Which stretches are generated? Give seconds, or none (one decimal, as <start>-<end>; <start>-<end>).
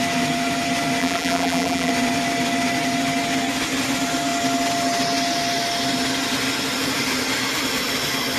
1.0-1.9